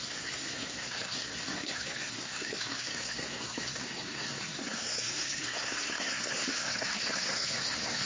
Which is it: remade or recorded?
remade